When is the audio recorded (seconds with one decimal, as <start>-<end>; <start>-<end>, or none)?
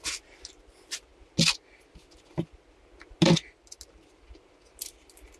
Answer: 0.0-5.4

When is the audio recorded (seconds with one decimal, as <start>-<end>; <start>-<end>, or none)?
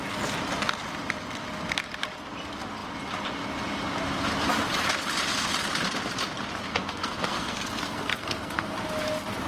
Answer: 0.0-6.7; 8.7-9.5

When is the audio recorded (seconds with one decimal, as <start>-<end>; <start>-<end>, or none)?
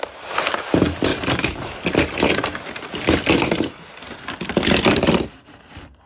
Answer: 0.0-1.1; 3.3-6.1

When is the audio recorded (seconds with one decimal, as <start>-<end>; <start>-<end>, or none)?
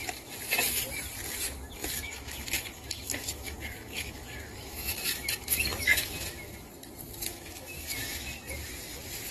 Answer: 0.0-1.8; 6.7-7.3; 8.3-9.3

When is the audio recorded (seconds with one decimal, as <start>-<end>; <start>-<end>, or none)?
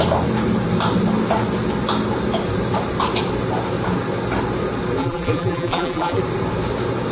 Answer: 0.0-5.0; 6.2-7.1